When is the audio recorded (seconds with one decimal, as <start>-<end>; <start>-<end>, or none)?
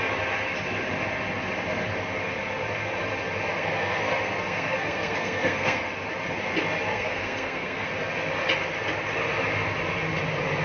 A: 0.0-3.5; 5.9-6.9; 7.9-10.6